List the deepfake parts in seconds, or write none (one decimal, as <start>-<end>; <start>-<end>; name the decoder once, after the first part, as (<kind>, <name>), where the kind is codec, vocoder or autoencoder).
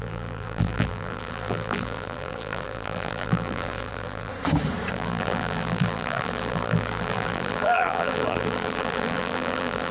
0.0-4.3 (vocoder, BigVGAN v2); 4.9-9.9